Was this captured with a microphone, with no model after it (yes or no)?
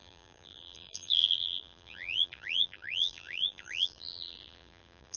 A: no